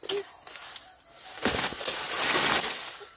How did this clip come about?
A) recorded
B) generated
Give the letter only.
A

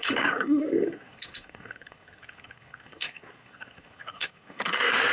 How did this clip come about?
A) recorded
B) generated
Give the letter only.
B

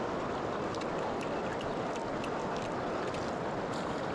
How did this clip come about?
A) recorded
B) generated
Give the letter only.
A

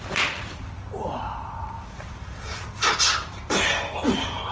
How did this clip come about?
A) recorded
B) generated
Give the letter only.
A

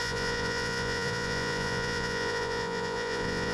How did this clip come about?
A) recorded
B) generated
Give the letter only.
B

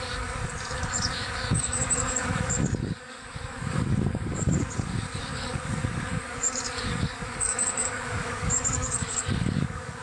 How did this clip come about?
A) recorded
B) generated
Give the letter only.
B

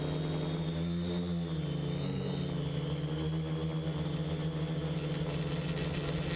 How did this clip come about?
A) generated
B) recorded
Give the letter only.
B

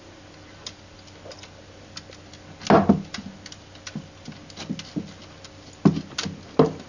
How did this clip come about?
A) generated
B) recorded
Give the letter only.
B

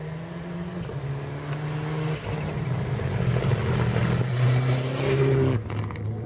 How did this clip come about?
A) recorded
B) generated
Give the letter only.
A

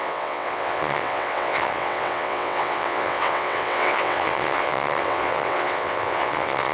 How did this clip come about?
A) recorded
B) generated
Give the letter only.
B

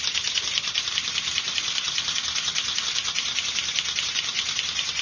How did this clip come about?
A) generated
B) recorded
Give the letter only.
B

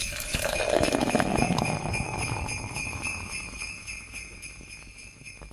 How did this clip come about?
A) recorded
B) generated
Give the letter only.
B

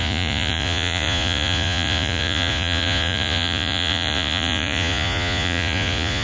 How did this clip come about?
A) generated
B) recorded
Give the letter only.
A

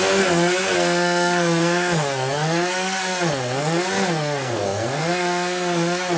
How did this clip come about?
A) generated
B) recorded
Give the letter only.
A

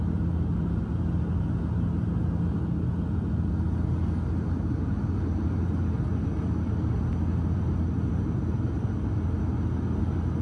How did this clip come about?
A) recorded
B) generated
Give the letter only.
A